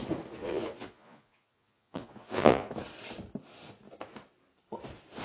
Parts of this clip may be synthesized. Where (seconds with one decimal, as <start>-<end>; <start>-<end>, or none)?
0.4-2.7